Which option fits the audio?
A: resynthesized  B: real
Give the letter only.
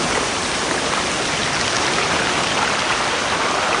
B